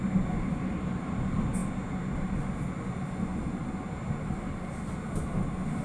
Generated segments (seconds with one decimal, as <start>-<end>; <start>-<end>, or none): none

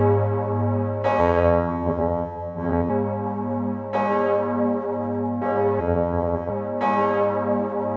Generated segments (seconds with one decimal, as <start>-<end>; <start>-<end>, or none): 1.2-2.9; 5.8-6.5